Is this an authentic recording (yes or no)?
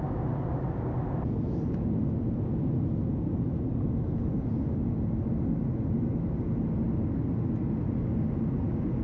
yes